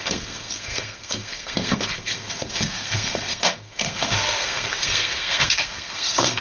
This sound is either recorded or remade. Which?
remade